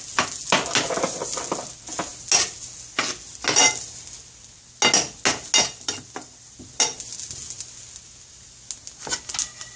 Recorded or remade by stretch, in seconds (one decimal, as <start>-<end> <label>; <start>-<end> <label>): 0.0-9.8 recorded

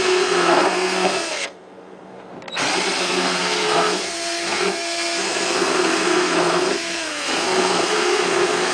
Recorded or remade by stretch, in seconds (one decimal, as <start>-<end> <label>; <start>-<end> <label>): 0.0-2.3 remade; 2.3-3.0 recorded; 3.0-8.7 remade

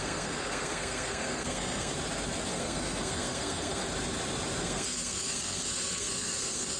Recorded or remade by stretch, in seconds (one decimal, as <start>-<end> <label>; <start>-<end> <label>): 0.0-1.9 remade; 1.9-2.5 recorded; 2.5-3.8 remade; 3.8-4.6 recorded; 4.6-6.8 remade

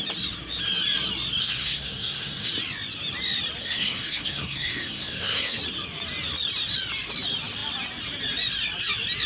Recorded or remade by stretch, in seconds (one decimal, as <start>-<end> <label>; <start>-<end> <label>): 0.0-1.4 recorded; 1.4-2.5 remade; 2.5-3.6 recorded; 3.6-5.6 remade; 5.6-9.3 recorded